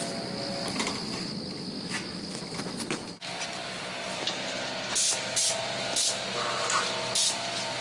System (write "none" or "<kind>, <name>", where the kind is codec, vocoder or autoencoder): none